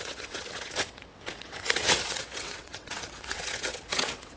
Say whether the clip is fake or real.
fake